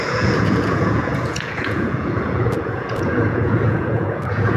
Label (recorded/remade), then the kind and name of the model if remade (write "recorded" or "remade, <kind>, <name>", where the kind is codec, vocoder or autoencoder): remade, vocoder, Vocos